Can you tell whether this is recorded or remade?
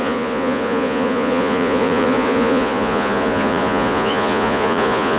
remade